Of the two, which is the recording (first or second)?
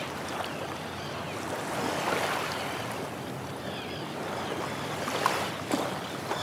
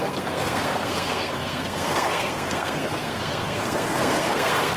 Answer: first